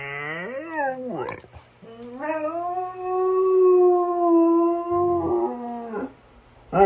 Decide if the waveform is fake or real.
real